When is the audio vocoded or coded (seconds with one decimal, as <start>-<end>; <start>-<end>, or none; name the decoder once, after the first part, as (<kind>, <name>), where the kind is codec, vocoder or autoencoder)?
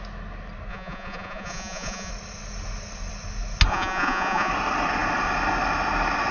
0.7-2.1 (vocoder, Vocos); 3.7-4.5